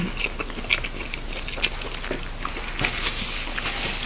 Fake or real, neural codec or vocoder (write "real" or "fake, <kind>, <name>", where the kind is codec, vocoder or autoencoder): real